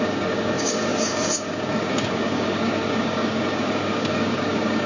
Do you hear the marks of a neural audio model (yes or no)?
yes